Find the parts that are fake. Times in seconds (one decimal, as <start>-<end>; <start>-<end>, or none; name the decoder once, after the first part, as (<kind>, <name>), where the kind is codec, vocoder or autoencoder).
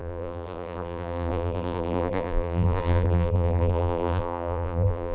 0.0-5.1 (vocoder, BigVGAN v2)